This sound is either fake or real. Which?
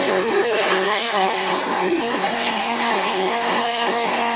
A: fake